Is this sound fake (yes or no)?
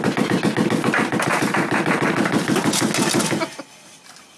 no